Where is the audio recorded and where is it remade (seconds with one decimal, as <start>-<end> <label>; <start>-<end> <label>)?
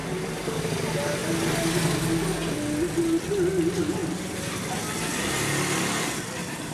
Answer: 0.0-0.6 remade; 0.6-6.7 recorded